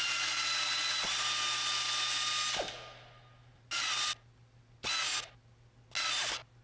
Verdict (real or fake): real